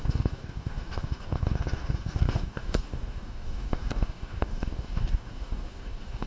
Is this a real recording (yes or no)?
no